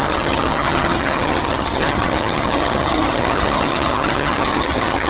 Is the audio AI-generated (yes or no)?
yes